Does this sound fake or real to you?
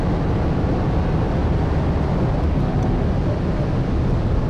real